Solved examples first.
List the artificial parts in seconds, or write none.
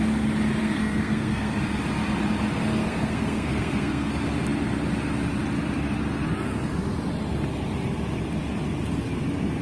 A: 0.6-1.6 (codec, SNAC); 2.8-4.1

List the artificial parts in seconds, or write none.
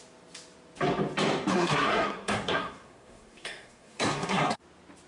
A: 1.5-4.6 (codec, SNAC)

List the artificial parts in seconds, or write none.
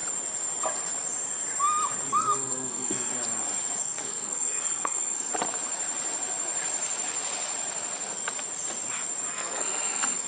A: 2.1-3.1 (codec, SNAC); 3.8-5.3; 9.3-10.3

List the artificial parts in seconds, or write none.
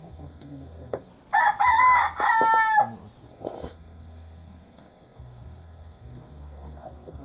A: 0.0-1.1 (codec, SNAC); 3.2-7.2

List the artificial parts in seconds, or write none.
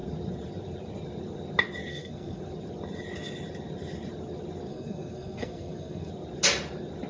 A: 1.9-2.4 (codec, SNAC); 4.7-6.1